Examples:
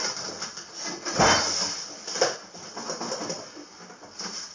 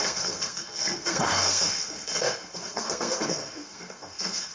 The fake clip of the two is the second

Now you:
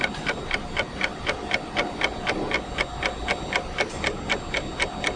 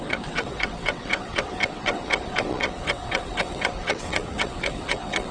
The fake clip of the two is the second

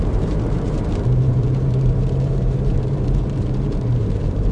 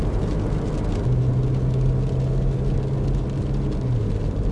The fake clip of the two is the first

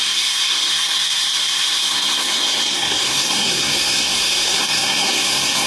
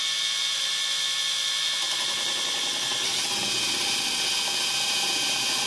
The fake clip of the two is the first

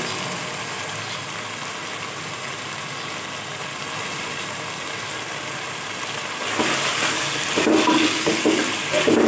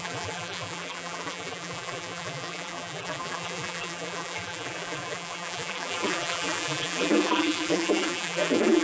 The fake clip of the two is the second